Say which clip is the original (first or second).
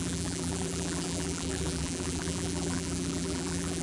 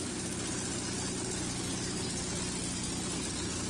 second